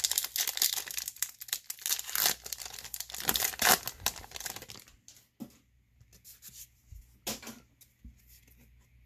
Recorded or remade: recorded